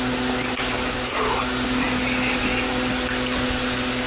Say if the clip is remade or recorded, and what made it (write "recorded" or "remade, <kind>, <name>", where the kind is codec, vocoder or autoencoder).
recorded